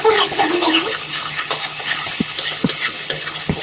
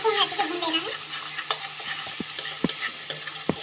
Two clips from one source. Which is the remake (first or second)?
first